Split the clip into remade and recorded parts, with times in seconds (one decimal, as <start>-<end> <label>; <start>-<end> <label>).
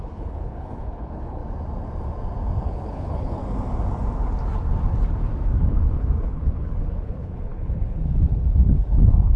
0.0-1.4 remade; 1.4-2.6 recorded; 2.6-3.4 remade; 3.4-5.6 recorded; 5.6-9.4 remade